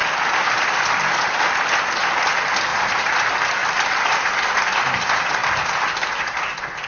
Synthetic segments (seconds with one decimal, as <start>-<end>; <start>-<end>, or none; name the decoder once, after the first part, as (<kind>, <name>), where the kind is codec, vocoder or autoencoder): 0.0-1.8 (vocoder, BigVGAN v2); 2.7-3.2; 5.4-6.5